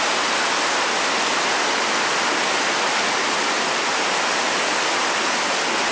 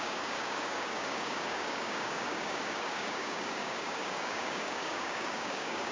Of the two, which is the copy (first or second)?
second